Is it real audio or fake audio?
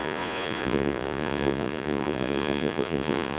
fake